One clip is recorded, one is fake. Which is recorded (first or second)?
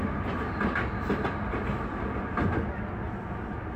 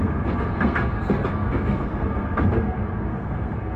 first